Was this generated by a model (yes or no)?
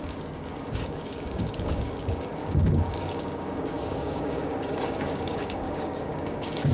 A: yes